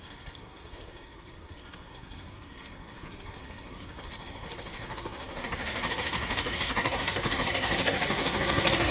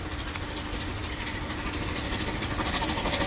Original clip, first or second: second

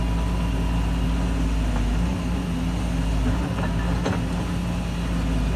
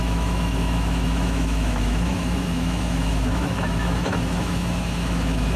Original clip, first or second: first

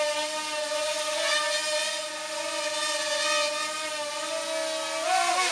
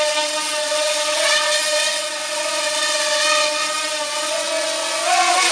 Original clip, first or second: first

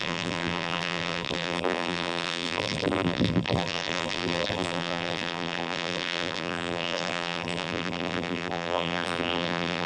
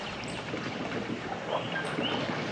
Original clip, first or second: second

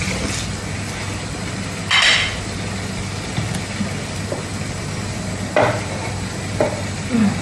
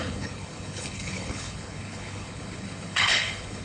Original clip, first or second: first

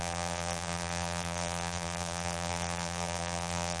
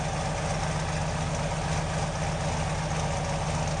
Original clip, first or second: second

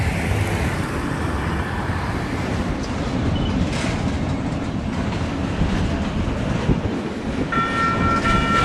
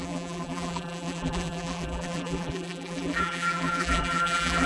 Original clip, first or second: first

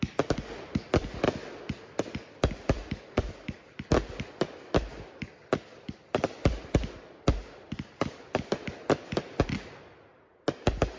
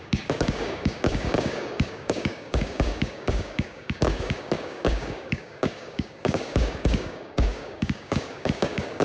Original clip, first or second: first